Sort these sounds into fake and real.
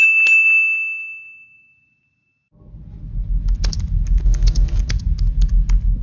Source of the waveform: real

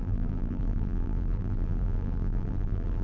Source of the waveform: fake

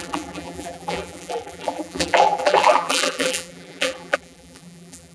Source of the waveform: fake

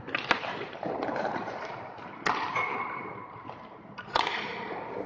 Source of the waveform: fake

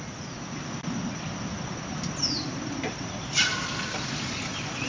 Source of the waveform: real